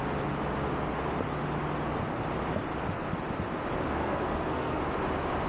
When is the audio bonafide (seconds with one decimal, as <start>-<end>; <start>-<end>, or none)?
0.0-4.0; 4.8-5.5